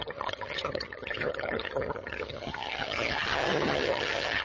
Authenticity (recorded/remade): remade